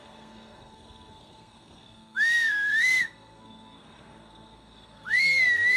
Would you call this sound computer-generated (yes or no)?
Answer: yes